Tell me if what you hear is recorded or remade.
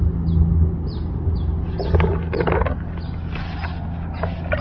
recorded